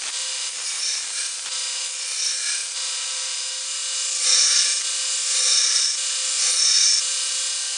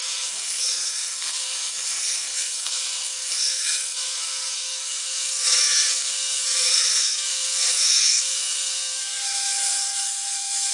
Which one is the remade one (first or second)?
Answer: second